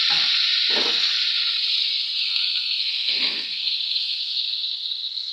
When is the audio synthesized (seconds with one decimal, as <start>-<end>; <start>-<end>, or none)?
2.3-5.3